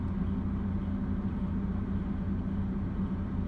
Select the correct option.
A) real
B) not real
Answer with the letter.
A